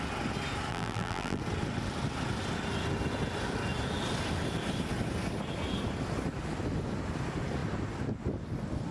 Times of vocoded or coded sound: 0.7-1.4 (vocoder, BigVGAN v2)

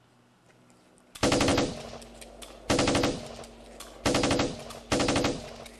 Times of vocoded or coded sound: none

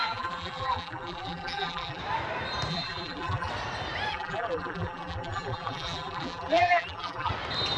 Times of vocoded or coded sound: 0.0-2.0 (vocoder, BigVGAN v2); 2.7-3.5; 4.1-7.3

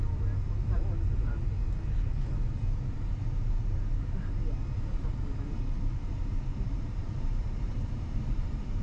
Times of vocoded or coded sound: 6.5-8.8 (vocoder, BigVGAN v2)

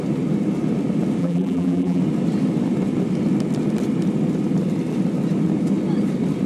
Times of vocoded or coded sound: 1.2-2.0 (vocoder, BigVGAN v2)

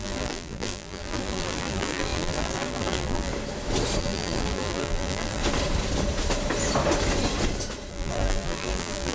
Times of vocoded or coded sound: 0.0-3.3 (vocoder, BigVGAN v2); 4.0-5.4; 7.9-9.1

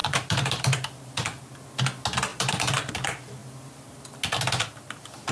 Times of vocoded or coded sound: 0.0-1.4 (vocoder, BigVGAN v2); 2.3-2.9